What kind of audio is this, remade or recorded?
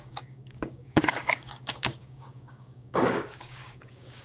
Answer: remade